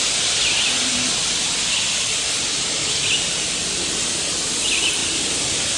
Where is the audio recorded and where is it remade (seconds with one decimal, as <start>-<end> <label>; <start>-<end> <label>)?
0.0-5.0 recorded; 5.0-5.8 remade